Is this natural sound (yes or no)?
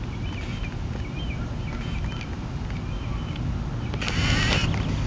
yes